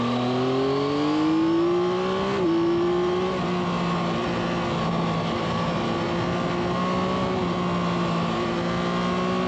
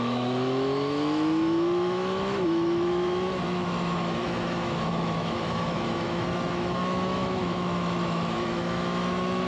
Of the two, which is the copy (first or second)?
second